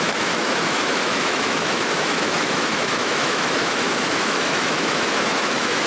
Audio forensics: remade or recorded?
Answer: remade